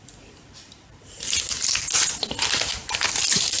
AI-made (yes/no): no